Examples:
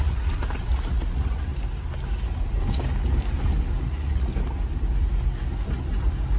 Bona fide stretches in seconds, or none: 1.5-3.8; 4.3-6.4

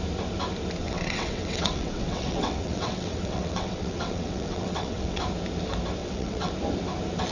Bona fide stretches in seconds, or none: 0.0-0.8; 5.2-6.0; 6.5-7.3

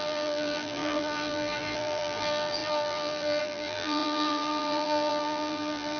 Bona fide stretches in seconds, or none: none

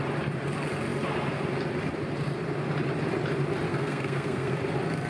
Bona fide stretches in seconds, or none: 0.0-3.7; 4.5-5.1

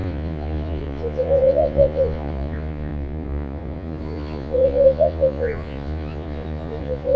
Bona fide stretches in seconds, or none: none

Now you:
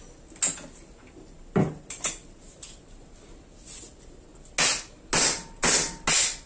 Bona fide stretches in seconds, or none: 0.0-6.5

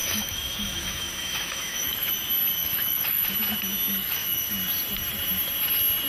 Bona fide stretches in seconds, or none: 2.1-2.6; 3.3-4.0; 4.5-6.1